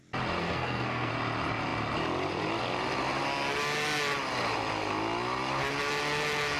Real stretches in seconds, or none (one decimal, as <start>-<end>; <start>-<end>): 0.0-0.4; 1.1-6.6